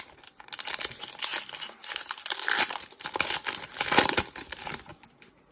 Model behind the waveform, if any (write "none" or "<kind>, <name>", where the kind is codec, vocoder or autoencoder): none